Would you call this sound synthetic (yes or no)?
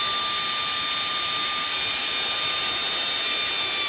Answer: no